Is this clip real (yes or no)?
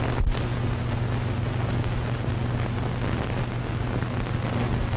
yes